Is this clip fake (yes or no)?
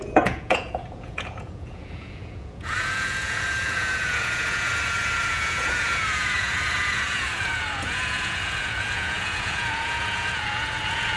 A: yes